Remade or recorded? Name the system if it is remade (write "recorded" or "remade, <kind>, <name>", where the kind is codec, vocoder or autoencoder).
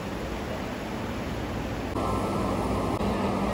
recorded